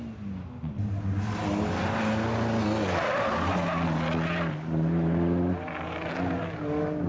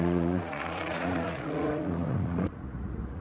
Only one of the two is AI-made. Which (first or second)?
second